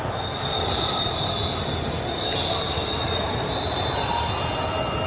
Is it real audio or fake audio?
real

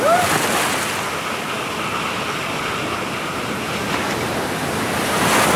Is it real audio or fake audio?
real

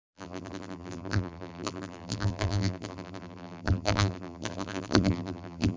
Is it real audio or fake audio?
fake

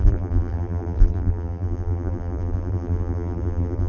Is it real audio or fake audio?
fake